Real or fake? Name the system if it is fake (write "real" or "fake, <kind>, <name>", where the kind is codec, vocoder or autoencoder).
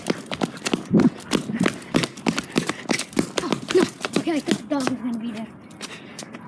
real